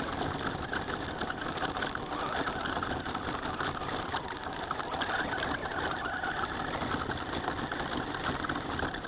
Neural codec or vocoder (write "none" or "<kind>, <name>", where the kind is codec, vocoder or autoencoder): none